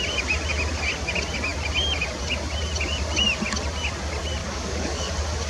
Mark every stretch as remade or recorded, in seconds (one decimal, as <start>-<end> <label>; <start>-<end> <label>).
0.0-4.4 recorded; 4.4-5.1 remade; 5.1-5.5 recorded